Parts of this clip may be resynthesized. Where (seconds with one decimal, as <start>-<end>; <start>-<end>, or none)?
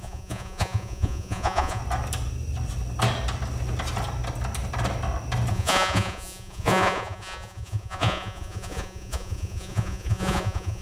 0.0-1.8; 5.5-10.8